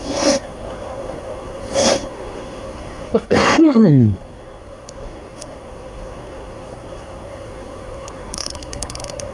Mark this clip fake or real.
fake